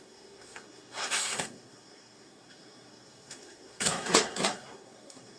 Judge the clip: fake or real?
fake